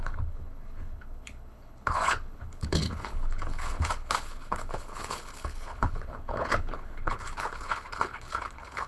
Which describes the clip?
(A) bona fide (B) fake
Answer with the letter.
B